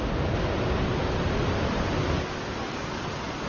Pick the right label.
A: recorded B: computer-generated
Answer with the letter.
A